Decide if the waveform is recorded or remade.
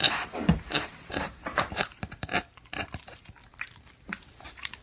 remade